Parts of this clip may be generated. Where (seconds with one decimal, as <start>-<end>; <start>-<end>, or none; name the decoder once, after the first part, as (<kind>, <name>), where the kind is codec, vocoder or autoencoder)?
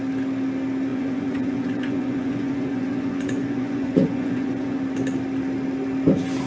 0.9-4.8 (vocoder, Vocos)